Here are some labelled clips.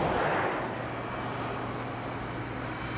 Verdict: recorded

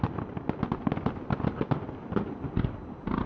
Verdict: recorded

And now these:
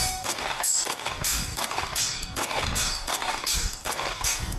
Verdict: remade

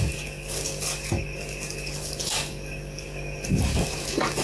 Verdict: remade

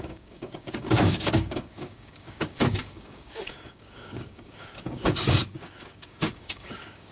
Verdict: remade